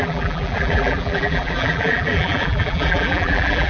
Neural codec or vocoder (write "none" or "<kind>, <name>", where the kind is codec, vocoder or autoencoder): vocoder, BigVGAN v2